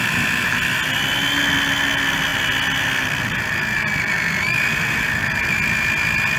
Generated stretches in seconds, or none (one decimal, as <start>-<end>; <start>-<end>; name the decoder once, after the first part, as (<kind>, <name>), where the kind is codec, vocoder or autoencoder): none